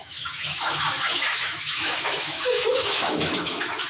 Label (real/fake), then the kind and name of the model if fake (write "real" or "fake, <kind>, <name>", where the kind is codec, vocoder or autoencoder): fake, autoencoder, DAC-VAE